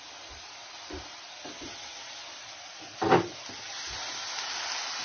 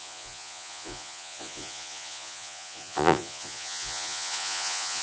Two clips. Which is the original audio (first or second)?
first